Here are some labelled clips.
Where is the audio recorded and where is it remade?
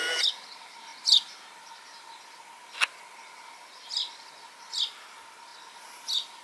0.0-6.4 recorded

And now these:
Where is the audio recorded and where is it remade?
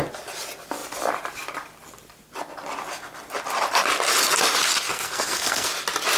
0.0-4.9 recorded; 4.9-5.7 remade; 5.7-6.2 recorded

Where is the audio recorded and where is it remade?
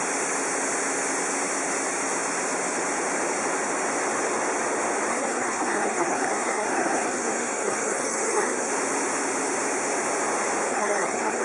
0.0-5.1 recorded; 5.1-8.7 remade; 8.7-10.7 recorded; 10.7-11.4 remade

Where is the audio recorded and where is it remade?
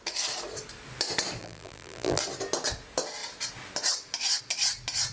0.0-1.4 recorded; 1.4-2.2 remade; 2.2-5.1 recorded